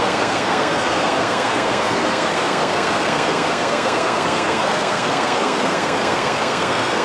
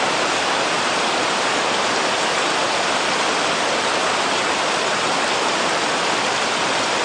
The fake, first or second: first